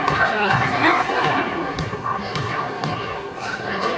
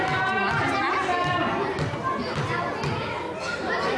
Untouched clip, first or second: second